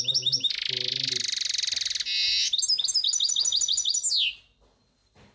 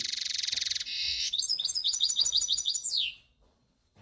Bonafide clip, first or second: first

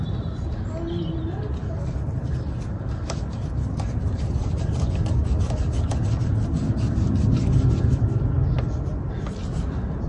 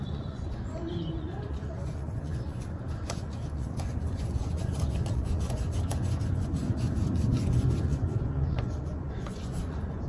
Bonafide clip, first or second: first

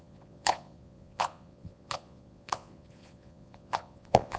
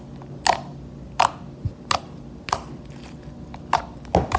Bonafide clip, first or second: second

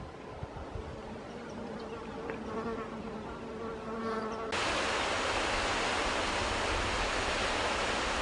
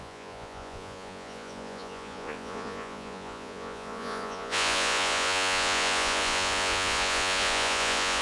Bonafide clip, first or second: first